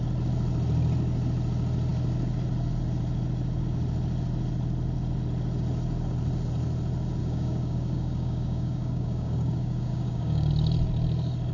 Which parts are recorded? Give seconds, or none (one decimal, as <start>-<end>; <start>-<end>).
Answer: 0.0-7.2; 10.5-11.5